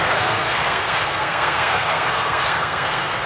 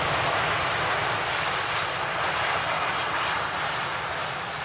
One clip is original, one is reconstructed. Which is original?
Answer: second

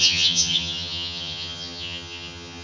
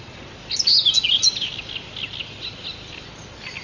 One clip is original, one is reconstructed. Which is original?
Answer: second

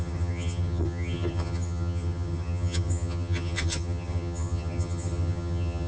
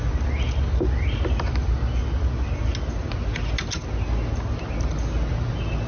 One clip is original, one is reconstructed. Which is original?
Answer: second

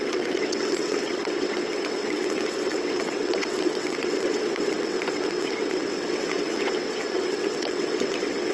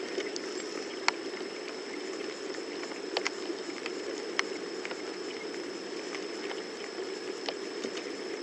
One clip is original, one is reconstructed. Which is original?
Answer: second